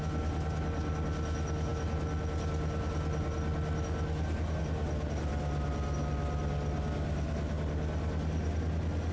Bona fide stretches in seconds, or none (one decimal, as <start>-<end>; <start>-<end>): 0.0-9.1